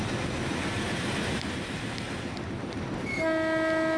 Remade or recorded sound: recorded